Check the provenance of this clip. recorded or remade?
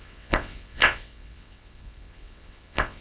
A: remade